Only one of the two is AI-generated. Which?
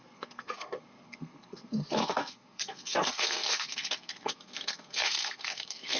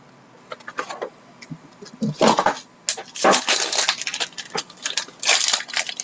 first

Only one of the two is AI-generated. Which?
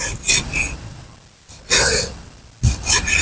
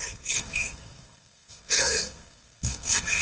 second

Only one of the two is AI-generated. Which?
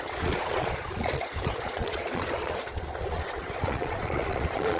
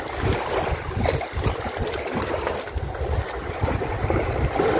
first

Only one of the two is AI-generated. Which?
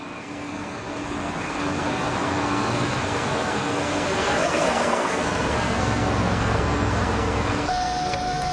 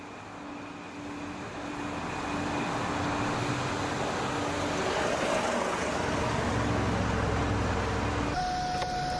first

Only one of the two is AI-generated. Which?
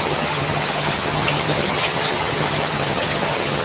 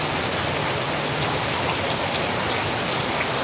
first